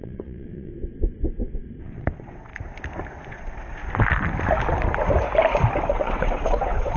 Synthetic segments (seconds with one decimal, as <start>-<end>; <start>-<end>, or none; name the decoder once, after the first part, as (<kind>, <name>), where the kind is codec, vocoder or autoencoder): 0.0-0.7 (vocoder, WaveNeXt); 1.8-2.5; 3.3-3.8; 5.9-7.0